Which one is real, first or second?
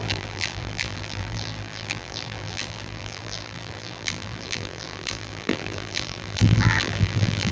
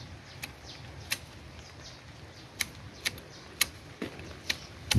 second